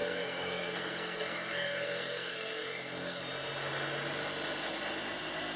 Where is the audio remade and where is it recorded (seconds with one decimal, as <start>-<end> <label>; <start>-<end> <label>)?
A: 0.0-3.2 remade; 3.2-5.6 recorded